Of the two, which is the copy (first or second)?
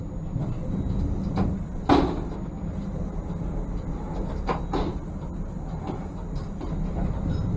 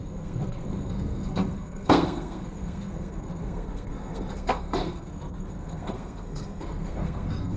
second